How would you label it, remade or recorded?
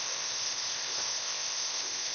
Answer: remade